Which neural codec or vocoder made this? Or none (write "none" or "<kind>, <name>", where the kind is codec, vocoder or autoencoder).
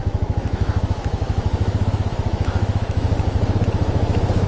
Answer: autoencoder, DAC-VAE